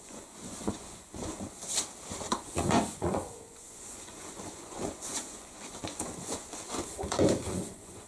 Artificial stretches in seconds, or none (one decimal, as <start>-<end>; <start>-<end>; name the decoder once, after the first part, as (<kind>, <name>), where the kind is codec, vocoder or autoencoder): 0.0-1.6 (vocoder, Vocos); 2.3-8.1